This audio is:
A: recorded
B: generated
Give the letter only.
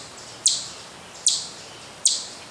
A